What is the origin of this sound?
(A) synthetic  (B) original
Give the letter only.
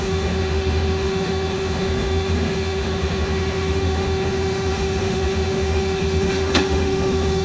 A